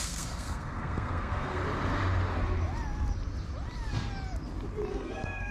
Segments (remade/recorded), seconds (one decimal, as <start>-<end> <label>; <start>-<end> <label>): 0.0-1.6 remade; 1.6-4.9 recorded; 4.9-5.5 remade

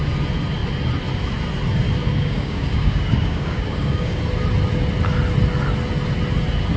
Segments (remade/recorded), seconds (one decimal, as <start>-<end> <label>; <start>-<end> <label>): 0.0-2.0 recorded; 2.0-4.2 remade; 4.2-6.8 recorded

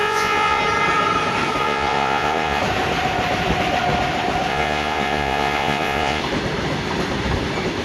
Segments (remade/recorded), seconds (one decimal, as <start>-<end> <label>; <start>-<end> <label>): 0.0-0.6 remade; 0.6-1.6 recorded; 1.6-2.6 remade; 2.6-4.5 recorded; 4.5-6.2 remade; 6.2-7.8 recorded